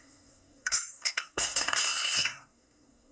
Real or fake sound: fake